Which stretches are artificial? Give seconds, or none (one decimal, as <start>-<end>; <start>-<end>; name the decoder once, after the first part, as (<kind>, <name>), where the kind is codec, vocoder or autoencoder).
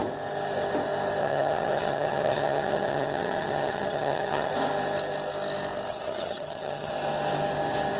1.2-4.5 (vocoder, HiFi-GAN); 5.9-6.9